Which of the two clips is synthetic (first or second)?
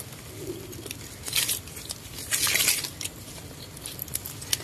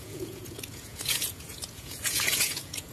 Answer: second